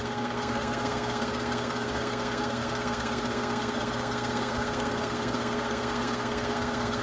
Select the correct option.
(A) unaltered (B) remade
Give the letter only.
B